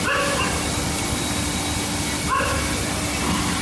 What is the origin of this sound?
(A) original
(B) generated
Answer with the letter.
A